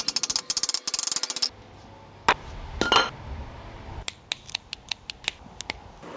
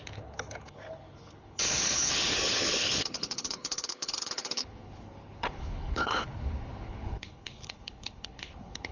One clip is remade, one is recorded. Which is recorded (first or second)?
first